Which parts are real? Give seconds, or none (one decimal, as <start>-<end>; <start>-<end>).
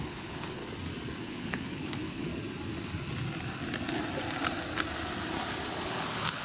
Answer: 0.6-1.2; 2.3-5.8